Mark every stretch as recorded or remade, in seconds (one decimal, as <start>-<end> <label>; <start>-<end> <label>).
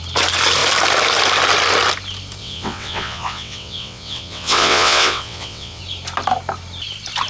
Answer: 0.0-2.4 recorded; 2.4-5.8 remade; 5.8-7.3 recorded